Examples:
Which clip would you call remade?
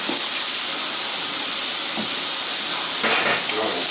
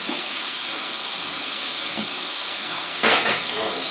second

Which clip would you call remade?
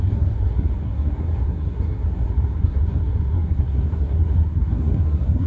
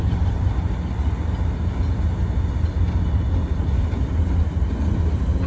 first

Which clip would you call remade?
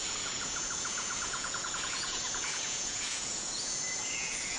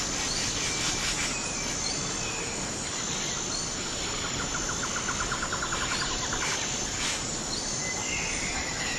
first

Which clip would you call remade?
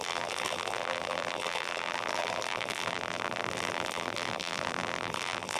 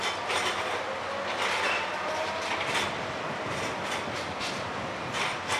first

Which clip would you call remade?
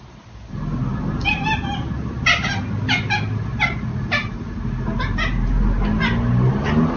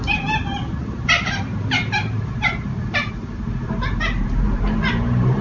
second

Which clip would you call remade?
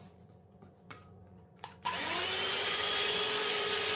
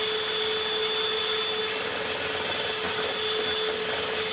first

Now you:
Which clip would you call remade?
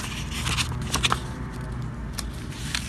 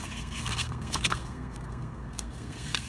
second